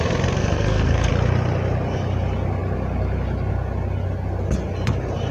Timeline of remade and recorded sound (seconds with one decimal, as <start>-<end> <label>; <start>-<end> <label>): 0.0-0.4 recorded; 0.4-1.1 remade; 1.1-5.3 recorded